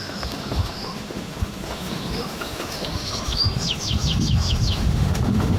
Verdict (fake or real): fake